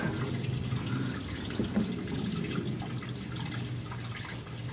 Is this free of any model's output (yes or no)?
yes